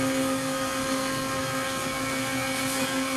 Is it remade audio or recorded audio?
remade